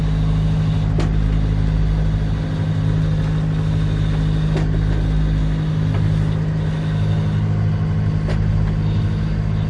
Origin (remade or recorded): recorded